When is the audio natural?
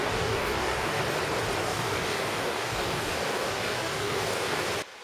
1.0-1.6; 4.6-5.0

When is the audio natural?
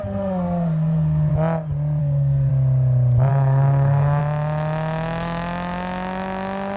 1.3-2.0; 2.5-3.3; 4.2-6.8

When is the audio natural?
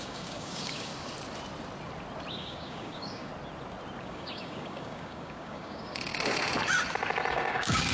0.9-2.3; 3.3-4.0; 6.1-7.3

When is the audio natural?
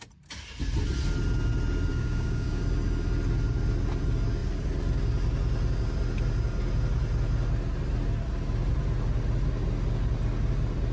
0.0-1.9; 2.6-10.9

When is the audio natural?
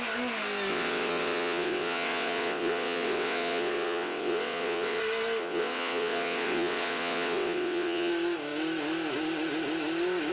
0.0-0.7; 5.0-5.4; 8.1-10.3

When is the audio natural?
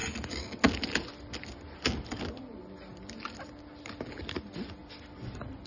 0.0-5.7